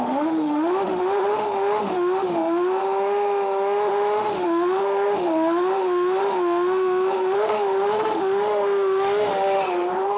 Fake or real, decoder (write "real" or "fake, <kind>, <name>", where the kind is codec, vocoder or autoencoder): fake, autoencoder, DAC-VAE